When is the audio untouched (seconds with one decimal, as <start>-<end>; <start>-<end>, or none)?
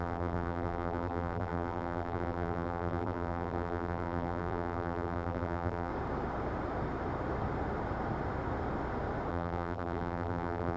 5.9-9.3